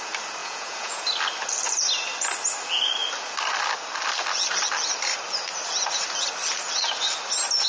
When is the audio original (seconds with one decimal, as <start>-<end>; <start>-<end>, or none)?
0.0-0.4; 1.0-7.7